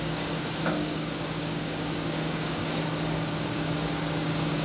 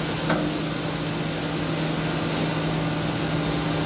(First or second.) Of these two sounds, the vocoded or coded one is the first